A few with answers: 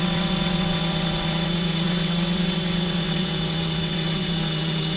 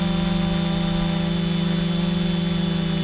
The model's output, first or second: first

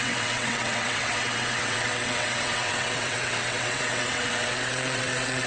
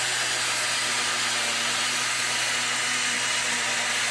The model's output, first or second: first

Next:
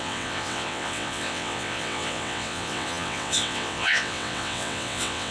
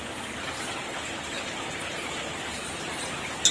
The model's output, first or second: first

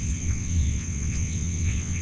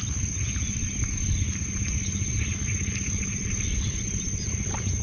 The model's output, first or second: first